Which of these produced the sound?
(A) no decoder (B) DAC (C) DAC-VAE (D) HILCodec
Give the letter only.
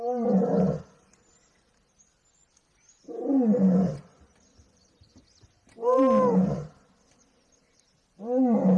A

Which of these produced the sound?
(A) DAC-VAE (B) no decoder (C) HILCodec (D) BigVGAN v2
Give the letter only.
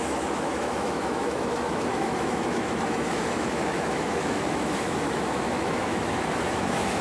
A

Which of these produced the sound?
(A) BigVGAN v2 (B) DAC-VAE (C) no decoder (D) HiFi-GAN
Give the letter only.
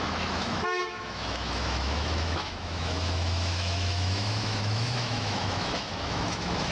B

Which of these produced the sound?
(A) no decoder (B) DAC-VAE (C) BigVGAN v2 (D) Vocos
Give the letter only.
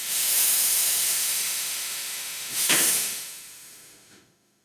B